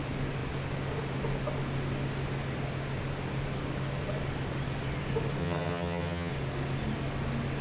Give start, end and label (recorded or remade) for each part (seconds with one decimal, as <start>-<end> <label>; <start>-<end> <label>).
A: 0.0-5.4 recorded; 5.4-6.3 remade; 6.3-7.6 recorded